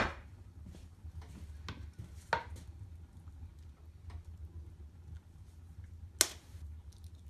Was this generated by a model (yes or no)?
no